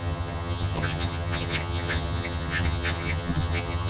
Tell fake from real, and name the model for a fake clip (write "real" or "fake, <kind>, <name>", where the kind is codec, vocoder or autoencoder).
fake, vocoder, HiFi-GAN